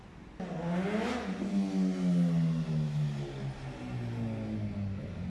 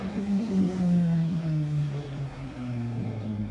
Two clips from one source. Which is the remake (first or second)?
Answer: second